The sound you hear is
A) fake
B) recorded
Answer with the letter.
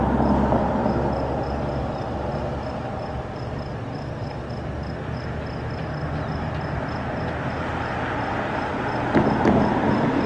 B